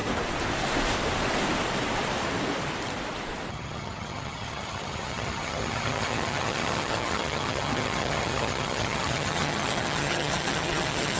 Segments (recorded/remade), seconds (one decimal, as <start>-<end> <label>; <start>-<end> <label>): 0.0-3.5 recorded; 3.5-11.2 remade